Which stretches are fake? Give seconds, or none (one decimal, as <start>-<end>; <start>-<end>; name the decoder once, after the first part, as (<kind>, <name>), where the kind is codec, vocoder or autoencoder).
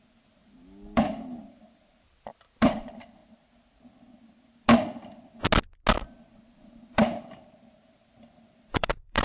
0.0-3.2 (vocoder, BigVGAN v2); 6.5-9.2